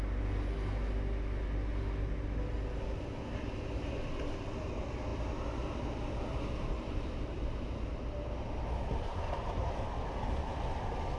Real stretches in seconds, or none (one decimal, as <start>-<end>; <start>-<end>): 0.0-11.2